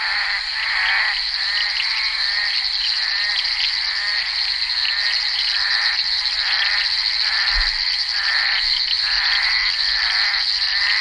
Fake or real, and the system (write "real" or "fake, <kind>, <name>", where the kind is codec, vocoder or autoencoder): real